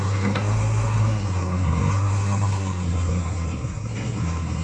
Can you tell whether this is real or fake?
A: fake